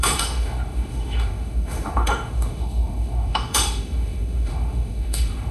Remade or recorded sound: remade